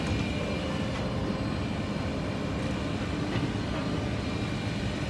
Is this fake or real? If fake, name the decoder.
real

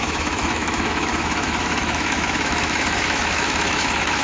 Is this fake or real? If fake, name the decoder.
fake, autoencoder, DAC-VAE